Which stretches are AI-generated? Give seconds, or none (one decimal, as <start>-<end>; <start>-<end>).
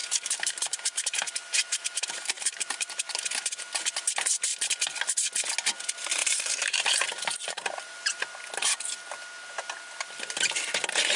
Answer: 0.0-3.2; 6.2-8.0